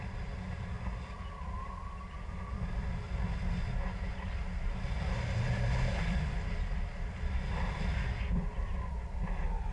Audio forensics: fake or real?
real